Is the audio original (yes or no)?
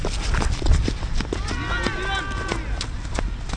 yes